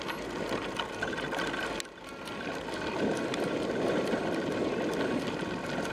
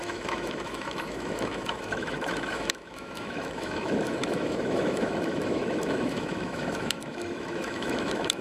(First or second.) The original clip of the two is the first